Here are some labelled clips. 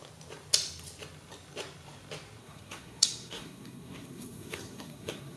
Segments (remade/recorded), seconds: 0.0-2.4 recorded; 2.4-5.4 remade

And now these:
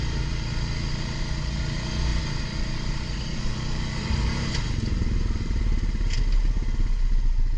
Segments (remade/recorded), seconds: 0.0-2.1 recorded; 2.1-6.2 remade; 6.2-7.6 recorded

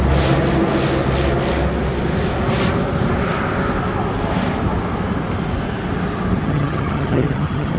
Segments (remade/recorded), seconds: 0.0-6.4 recorded; 6.4-7.8 remade

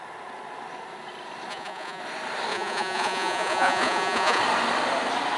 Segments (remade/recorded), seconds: 0.0-1.5 recorded; 1.5-2.0 remade; 2.0-2.5 recorded; 2.5-4.4 remade; 4.4-5.4 recorded

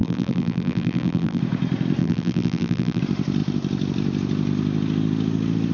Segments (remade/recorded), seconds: 0.0-1.4 remade; 1.4-2.0 recorded; 2.0-3.0 remade; 3.0-5.7 recorded

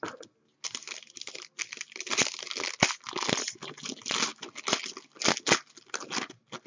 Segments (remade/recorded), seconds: 0.0-6.7 recorded

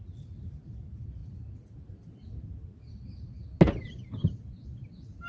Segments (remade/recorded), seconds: 0.0-5.3 recorded